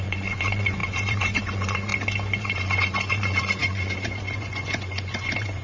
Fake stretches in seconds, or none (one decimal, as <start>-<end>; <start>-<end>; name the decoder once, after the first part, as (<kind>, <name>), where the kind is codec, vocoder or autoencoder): 0.0-1.9 (vocoder, Vocos); 2.4-5.6